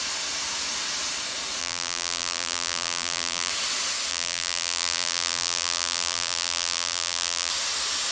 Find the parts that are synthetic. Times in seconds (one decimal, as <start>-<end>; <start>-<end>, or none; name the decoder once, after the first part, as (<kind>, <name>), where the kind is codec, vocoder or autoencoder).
1.6-3.5 (vocoder, BigVGAN v2); 4.1-7.5